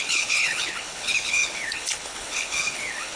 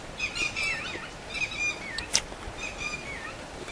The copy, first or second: first